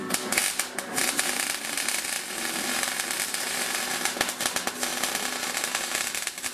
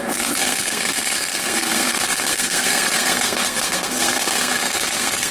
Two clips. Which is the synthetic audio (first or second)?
second